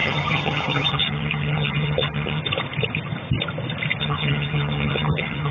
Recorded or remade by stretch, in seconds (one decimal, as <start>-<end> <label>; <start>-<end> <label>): 0.0-2.4 remade; 2.4-4.0 recorded; 4.0-5.5 remade